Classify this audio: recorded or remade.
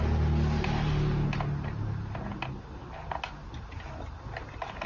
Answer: recorded